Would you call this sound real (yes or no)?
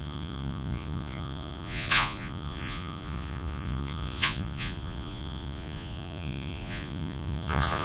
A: no